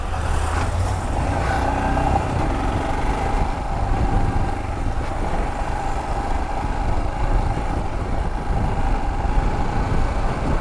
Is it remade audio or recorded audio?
recorded